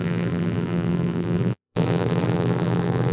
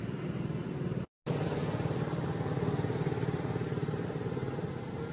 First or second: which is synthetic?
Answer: first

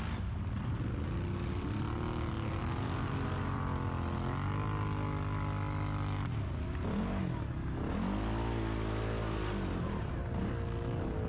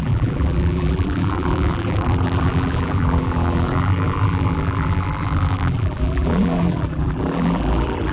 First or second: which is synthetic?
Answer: second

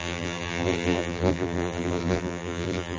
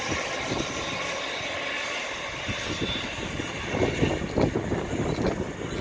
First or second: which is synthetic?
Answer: first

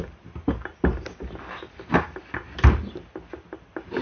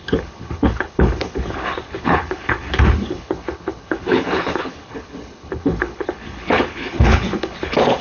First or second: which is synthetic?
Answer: second